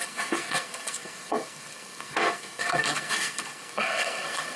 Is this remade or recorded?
remade